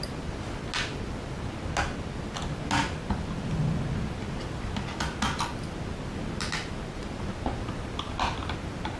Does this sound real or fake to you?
real